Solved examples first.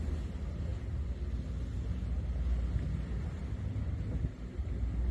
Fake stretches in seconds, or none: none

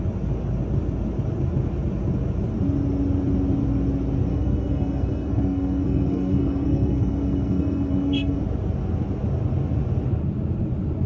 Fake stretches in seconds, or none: 4.3-8.4 (codec, SNAC)